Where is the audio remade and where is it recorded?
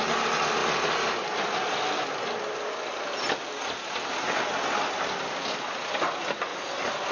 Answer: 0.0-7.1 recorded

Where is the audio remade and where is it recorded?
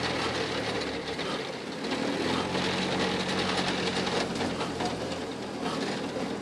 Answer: 0.0-3.9 recorded; 3.9-5.3 remade; 5.3-6.4 recorded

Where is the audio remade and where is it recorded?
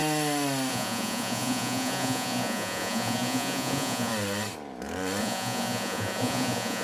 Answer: 0.0-0.7 recorded; 0.7-4.1 remade; 4.1-5.2 recorded; 5.2-6.8 remade